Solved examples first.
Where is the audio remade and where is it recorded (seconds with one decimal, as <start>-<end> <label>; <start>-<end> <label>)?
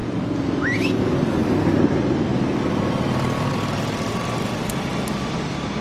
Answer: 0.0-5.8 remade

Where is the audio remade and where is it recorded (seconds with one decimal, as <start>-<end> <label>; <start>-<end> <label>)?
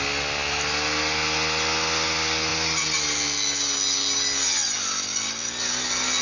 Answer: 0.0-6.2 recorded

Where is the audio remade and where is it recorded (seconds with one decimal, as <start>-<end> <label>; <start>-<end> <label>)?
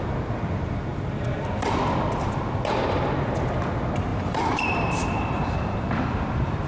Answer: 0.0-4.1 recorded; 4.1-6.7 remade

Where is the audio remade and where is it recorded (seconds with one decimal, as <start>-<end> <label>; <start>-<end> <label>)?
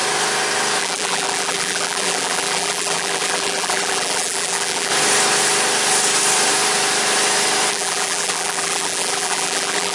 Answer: 0.0-0.8 recorded; 0.8-4.9 remade; 4.9-7.7 recorded; 7.7-9.9 remade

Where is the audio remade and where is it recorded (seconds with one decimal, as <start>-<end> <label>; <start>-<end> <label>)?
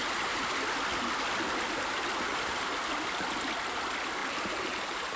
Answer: 0.0-2.3 recorded; 2.3-2.8 remade; 2.8-4.2 recorded; 4.2-5.2 remade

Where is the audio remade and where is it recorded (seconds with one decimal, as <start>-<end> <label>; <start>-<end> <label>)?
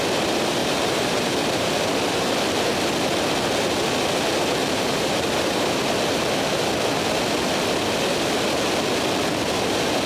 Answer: 0.0-0.6 recorded; 0.6-1.6 remade; 1.6-4.6 recorded; 4.6-5.8 remade; 5.8-10.1 recorded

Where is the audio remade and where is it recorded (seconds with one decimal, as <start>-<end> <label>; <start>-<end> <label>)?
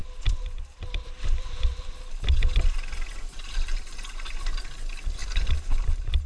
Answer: 0.0-1.9 remade; 1.9-3.3 recorded; 3.3-4.6 remade; 4.6-5.2 recorded; 5.2-6.3 remade